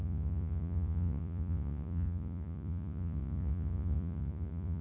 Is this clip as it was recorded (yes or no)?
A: no